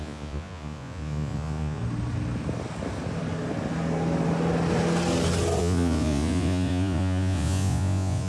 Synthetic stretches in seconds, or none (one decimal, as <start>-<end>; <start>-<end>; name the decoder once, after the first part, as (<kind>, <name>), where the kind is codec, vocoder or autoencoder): 0.0-1.8 (vocoder, Vocos); 5.6-8.3

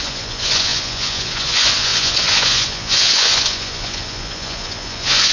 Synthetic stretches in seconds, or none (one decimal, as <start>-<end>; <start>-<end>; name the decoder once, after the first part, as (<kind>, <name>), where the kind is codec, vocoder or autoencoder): 0.0-5.3 (vocoder, Vocos)

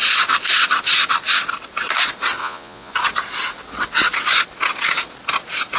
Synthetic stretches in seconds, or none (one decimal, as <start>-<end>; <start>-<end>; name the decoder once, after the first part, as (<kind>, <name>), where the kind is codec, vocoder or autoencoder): 2.4-2.9 (vocoder, Vocos)

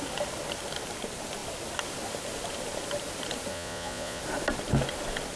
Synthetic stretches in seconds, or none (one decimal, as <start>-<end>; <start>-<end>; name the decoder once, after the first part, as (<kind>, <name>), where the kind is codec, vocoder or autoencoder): 3.5-4.2 (vocoder, Vocos)

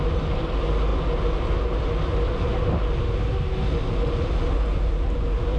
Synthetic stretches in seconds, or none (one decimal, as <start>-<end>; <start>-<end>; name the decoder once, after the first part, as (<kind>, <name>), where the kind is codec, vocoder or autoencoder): none